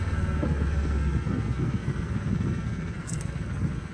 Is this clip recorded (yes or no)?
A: no